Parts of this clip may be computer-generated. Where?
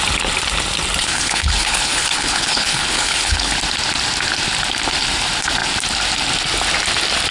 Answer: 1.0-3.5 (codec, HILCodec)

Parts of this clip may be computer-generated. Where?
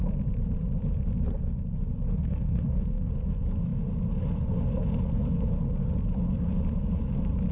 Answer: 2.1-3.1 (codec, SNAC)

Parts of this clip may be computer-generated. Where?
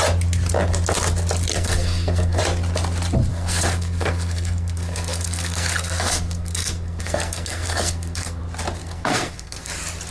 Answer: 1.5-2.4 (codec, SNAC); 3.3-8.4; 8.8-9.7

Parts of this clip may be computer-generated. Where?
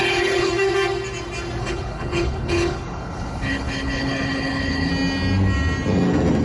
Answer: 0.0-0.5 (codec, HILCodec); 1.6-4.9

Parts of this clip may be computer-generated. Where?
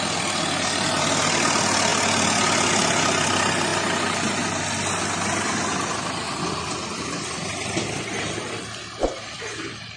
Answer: none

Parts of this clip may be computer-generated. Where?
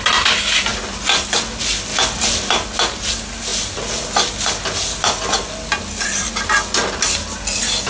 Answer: none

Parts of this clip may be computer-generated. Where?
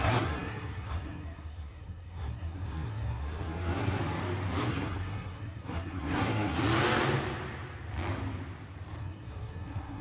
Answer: 0.0-4.0 (codec, SNAC); 4.7-6.6; 9.0-10.0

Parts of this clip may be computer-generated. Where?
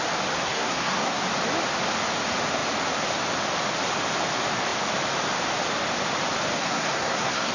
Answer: 0.4-1.2 (codec, SNAC); 6.6-7.5